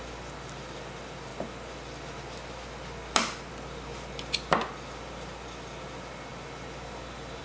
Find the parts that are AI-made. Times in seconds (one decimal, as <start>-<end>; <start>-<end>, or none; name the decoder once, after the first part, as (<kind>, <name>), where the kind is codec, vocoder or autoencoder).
none

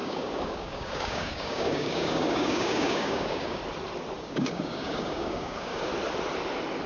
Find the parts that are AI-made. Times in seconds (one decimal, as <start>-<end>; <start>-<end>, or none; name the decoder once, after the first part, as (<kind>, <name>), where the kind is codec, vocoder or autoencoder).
0.0-3.6 (codec, DAC); 4.2-5.9